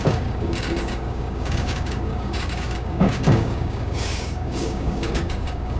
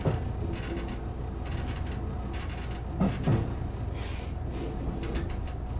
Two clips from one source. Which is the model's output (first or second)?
first